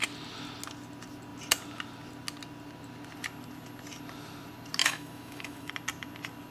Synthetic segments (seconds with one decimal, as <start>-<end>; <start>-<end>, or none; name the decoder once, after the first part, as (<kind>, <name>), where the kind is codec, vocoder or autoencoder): 4.8-5.7 (autoencoder, DAC-VAE)